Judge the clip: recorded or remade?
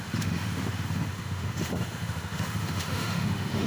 remade